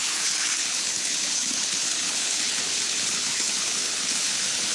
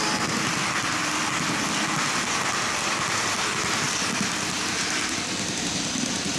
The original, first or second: second